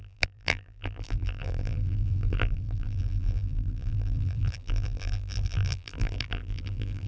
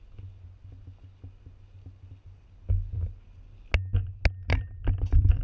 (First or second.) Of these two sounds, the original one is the second